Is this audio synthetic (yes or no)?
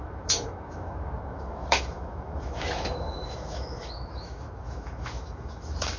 yes